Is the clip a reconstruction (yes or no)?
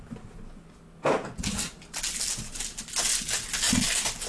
no